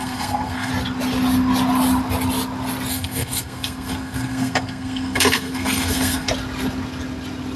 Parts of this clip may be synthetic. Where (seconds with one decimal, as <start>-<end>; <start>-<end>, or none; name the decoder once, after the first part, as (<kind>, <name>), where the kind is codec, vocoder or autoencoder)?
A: 0.0-0.7 (codec, SNAC); 2.9-6.3